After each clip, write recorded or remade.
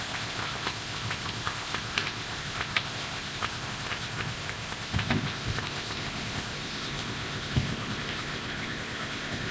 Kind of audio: remade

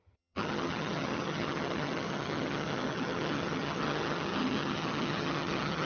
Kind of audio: remade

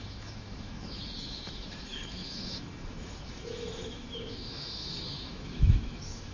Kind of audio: remade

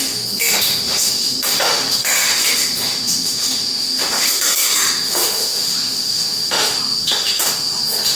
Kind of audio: remade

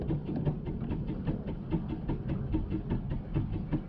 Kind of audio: recorded